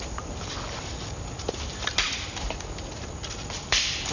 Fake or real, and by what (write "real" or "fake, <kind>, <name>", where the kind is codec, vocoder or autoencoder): real